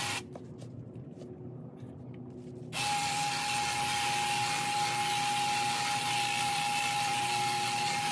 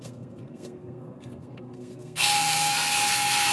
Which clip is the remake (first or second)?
second